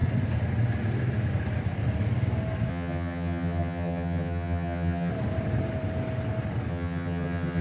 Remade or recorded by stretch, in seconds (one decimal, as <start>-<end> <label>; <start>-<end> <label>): 0.0-2.7 recorded; 2.7-5.1 remade; 5.1-6.7 recorded; 6.7-7.6 remade